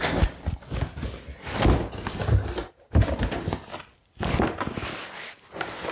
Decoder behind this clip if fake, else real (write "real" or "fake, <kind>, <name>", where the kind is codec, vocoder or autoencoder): real